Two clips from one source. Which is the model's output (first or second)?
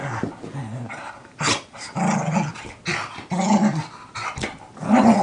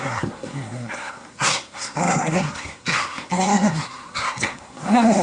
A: second